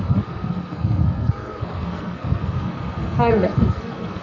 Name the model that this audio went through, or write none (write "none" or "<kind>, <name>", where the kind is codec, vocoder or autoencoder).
codec, SNAC